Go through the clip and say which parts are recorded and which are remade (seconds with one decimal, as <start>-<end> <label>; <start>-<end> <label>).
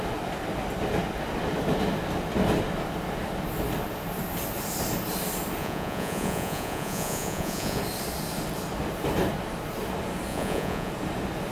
0.0-5.6 recorded; 5.6-7.8 remade; 7.8-10.3 recorded; 10.3-10.9 remade; 10.9-11.5 recorded